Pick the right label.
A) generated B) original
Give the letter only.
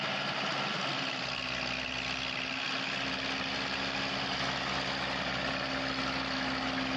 B